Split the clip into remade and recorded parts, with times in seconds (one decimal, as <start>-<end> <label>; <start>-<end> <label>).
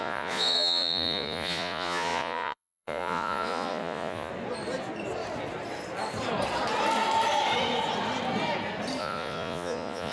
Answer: 0.0-4.3 remade; 4.3-9.0 recorded; 9.0-10.1 remade